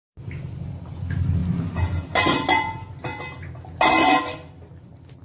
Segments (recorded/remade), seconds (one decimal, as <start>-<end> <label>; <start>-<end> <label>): 0.0-5.2 recorded